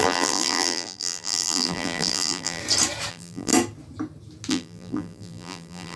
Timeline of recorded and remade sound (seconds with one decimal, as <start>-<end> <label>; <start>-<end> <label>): 0.0-2.6 remade; 2.6-3.1 recorded; 3.1-3.5 remade; 3.5-4.5 recorded; 4.5-6.0 remade